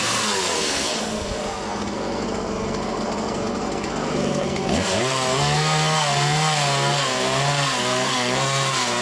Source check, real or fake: fake